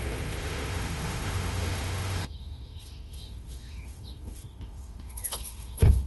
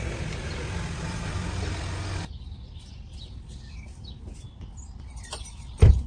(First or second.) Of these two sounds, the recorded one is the second